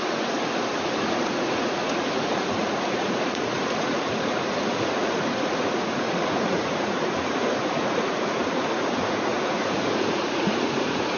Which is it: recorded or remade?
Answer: remade